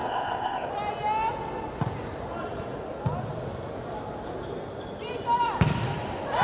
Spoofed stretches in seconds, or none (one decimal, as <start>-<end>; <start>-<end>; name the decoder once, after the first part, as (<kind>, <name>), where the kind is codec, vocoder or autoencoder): 0.0-0.7 (codec, ZipCodec)